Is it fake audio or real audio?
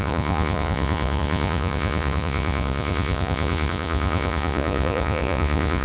fake